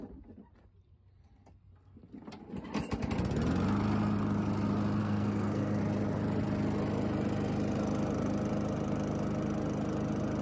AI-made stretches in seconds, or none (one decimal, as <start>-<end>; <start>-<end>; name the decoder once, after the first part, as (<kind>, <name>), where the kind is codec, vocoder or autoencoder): 5.0-5.8 (codec, SNAC)